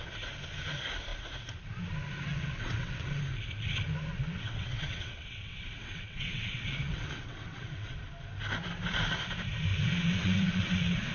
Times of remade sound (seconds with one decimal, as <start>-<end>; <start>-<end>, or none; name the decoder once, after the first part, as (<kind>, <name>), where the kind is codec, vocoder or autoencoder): 2.3-3.2 (vocoder, WaveNeXt); 4.1-8.0; 9.7-11.1